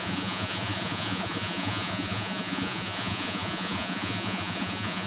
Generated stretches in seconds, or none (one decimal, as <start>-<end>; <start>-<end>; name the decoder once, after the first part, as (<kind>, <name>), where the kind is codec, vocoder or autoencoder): 0.0-5.1 (vocoder, Vocos)